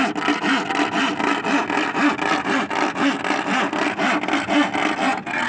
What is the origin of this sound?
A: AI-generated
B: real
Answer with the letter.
B